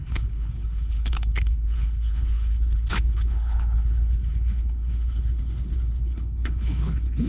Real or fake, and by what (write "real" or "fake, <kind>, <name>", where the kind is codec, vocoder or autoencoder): fake, codec, HILCodec